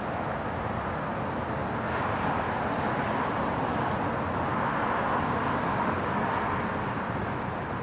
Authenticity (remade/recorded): recorded